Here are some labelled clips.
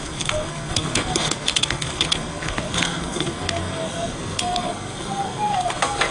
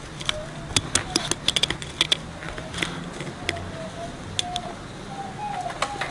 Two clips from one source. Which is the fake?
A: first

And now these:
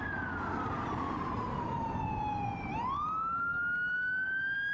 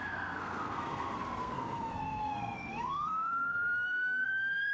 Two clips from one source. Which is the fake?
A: second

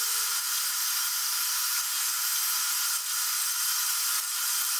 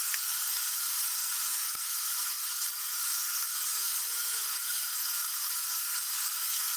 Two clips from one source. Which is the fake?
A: second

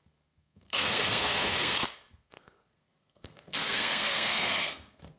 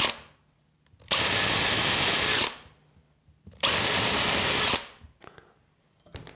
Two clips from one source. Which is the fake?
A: first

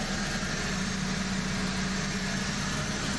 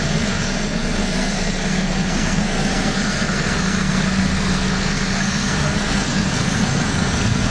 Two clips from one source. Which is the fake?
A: second